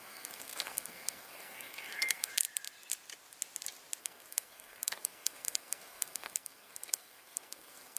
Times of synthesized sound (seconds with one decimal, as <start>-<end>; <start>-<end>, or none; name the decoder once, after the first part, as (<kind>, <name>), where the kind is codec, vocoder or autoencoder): 0.0-2.3 (codec, SNAC); 4.0-8.0